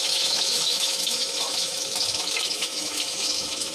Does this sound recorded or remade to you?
remade